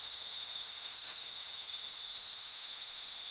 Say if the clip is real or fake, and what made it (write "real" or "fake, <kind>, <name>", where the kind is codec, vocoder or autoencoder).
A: fake, autoencoder, DAC-VAE